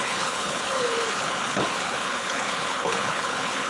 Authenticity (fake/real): fake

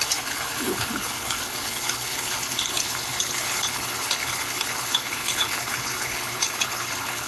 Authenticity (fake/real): fake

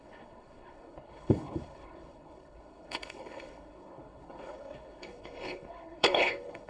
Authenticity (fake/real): fake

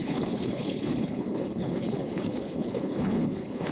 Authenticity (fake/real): fake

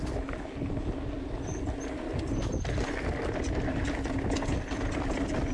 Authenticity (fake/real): real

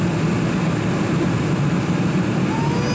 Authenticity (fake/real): real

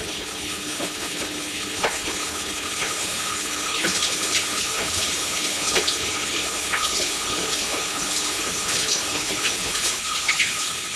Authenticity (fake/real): fake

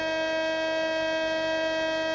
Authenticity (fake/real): real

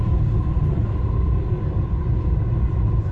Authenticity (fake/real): real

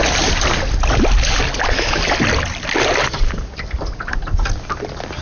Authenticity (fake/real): real